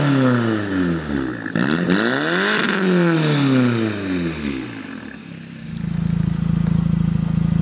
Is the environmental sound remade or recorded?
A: recorded